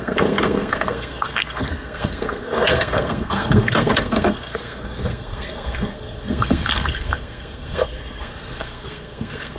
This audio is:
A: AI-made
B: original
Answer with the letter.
A